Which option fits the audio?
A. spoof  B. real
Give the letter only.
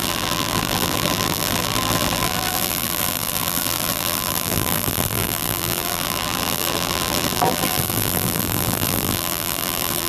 A